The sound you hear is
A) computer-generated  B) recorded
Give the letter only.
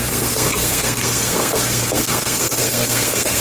A